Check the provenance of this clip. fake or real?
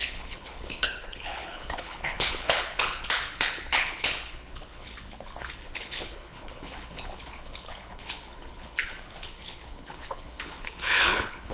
fake